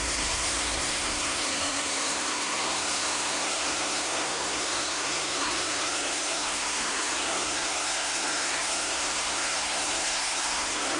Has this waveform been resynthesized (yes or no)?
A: yes